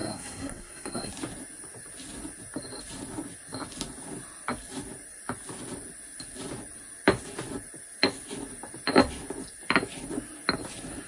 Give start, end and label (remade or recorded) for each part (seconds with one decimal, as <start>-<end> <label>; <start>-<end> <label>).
0.0-1.1 remade; 1.1-11.1 recorded